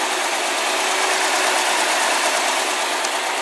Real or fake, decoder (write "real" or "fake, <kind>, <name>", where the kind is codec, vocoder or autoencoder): real